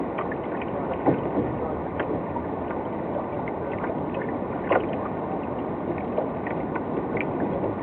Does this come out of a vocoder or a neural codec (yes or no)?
no